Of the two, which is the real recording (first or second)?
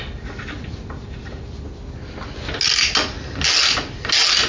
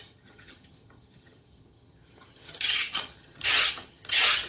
first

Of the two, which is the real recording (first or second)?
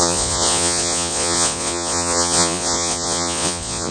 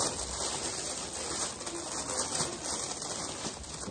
second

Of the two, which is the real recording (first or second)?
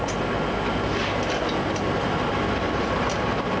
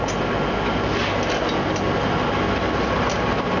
second